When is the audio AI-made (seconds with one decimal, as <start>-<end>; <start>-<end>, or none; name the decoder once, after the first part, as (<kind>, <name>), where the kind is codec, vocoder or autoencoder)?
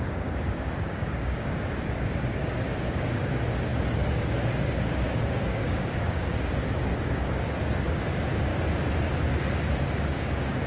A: 0.0-8.5 (codec, DAC); 10.2-10.7